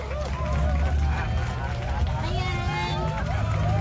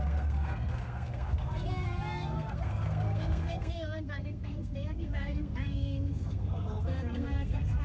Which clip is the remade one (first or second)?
second